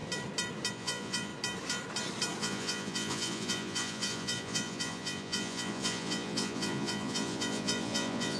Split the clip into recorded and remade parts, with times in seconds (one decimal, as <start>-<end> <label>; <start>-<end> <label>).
0.0-0.7 recorded; 0.7-1.3 remade; 1.3-2.4 recorded; 2.4-8.4 remade